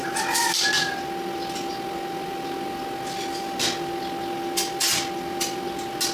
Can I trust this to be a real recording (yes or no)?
yes